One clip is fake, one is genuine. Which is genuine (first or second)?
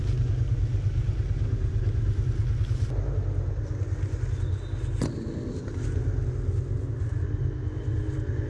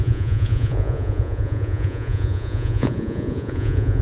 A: first